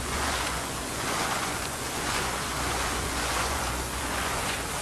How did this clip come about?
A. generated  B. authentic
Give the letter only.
A